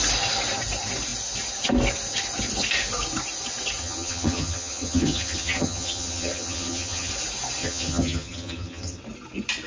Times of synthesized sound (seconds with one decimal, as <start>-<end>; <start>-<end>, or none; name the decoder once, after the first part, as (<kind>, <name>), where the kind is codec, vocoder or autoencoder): 3.8-7.1 (vocoder, HiFi-GAN); 7.6-9.0